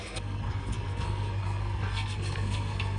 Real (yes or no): no